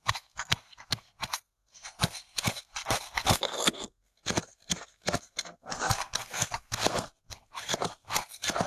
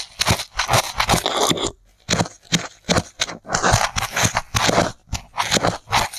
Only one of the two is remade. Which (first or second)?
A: first